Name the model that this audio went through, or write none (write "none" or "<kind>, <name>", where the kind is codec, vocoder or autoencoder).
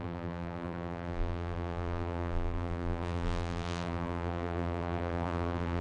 vocoder, BigVGAN v2